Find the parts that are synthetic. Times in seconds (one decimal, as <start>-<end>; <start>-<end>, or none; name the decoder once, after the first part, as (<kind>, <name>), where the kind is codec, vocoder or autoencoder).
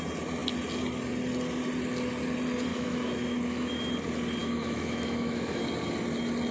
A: 2.7-3.9 (autoencoder, DAC-VAE); 4.4-5.6